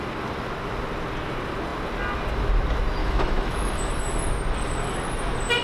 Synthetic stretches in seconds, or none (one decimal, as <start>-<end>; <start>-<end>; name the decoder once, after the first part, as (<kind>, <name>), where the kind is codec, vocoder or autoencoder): 3.0-3.9 (autoencoder, DAC-VAE)